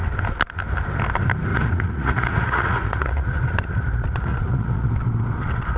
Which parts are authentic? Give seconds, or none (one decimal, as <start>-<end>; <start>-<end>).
0.0-1.5; 3.4-4.3; 4.9-5.8